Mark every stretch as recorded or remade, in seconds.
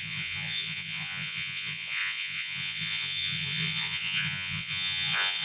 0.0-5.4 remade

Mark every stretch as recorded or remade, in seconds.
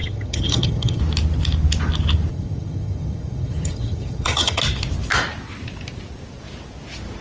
0.0-1.0 remade; 1.0-2.3 recorded; 2.3-4.6 remade; 4.6-7.2 recorded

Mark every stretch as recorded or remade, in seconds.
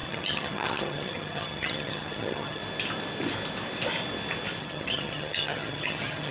0.0-2.6 remade; 2.6-4.6 recorded; 4.6-6.3 remade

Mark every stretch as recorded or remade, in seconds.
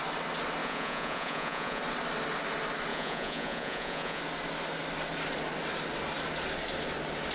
0.0-0.6 recorded; 0.6-1.8 remade; 1.8-2.9 recorded; 2.9-4.2 remade; 4.2-7.3 recorded